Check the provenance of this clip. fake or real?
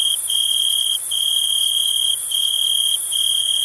fake